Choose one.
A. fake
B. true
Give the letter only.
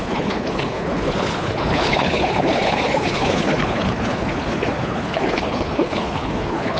A